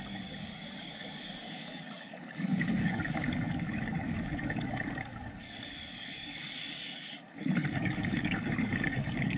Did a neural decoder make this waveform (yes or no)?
yes